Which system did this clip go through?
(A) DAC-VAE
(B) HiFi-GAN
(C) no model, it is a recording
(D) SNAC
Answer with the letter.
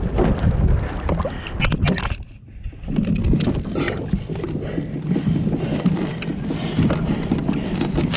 C